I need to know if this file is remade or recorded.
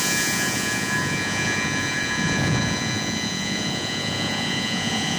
remade